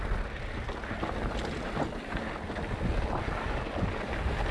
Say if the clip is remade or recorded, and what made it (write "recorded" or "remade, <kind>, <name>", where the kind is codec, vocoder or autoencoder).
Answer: recorded